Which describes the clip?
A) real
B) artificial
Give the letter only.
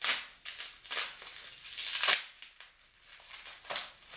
A